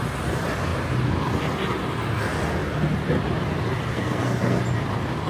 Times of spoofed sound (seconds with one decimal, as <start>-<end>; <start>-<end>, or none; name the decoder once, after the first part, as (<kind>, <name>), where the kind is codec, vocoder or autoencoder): 3.9-4.6 (codec, SNAC)